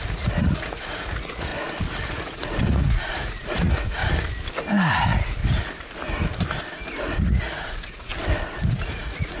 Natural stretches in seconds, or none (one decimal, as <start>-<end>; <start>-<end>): 1.5-2.1; 4.0-4.9; 5.4-7.0; 8.1-8.7